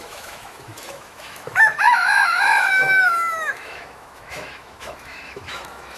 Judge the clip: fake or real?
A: fake